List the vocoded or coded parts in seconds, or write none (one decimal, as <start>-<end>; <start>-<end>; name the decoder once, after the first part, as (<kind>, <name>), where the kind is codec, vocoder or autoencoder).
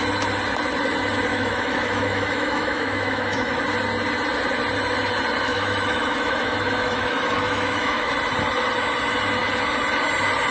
1.3-3.6 (autoencoder, DAC-VAE); 5.5-8.1